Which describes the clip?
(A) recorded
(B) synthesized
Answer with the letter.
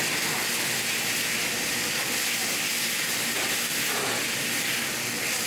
A